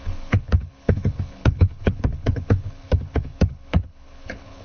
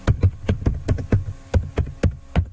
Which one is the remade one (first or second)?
first